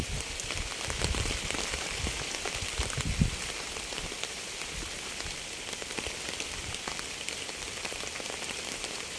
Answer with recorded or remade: remade